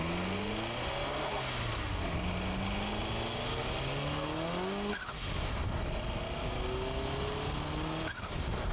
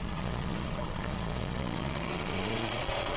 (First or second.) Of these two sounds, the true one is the first